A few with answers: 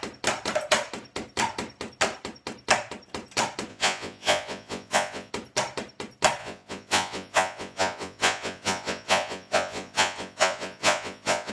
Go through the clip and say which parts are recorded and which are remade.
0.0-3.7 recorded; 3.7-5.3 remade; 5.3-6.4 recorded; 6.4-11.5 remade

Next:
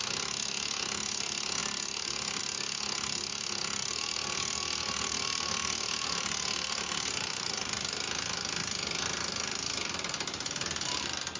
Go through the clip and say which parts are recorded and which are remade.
0.0-11.4 recorded

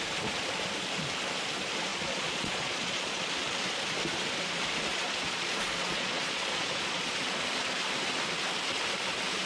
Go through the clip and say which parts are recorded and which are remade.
0.0-1.9 recorded; 1.9-3.2 remade; 3.2-4.9 recorded; 4.9-7.1 remade; 7.1-9.5 recorded

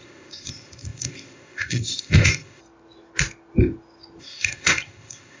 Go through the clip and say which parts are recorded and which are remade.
0.0-2.6 remade; 2.6-4.2 recorded; 4.2-5.4 remade

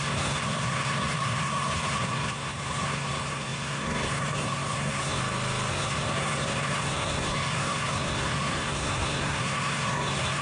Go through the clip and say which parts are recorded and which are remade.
0.0-5.2 remade; 5.2-5.7 recorded; 5.7-10.4 remade

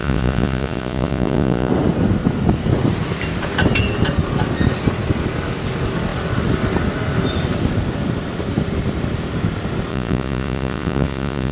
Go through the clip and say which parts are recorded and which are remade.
0.0-1.7 remade; 1.7-9.9 recorded; 9.9-11.5 remade

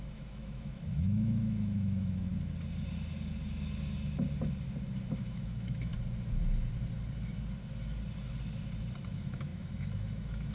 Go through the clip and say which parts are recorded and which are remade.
0.0-2.3 remade; 2.3-5.1 recorded; 5.1-5.9 remade; 5.9-9.1 recorded; 9.1-10.5 remade

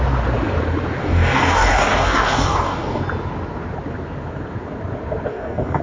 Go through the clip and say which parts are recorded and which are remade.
0.0-1.0 recorded; 1.0-3.0 remade; 3.0-5.3 recorded; 5.3-5.8 remade